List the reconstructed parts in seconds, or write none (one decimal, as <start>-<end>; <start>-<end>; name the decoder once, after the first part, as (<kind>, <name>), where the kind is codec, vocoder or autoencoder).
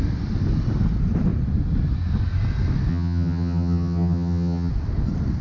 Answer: 2.9-4.7 (vocoder, HiFi-GAN)